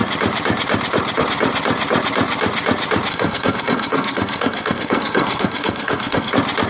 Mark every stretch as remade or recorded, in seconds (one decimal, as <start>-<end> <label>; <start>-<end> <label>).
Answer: 0.0-3.1 recorded; 3.1-6.3 remade; 6.3-6.7 recorded